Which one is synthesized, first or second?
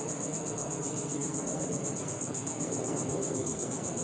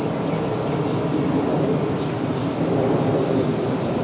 first